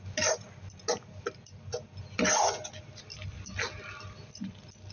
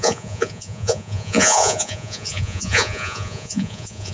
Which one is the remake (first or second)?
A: second